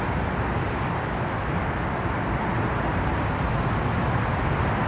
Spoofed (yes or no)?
yes